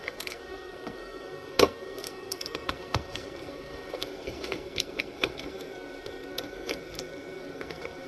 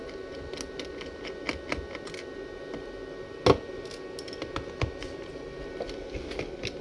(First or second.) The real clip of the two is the second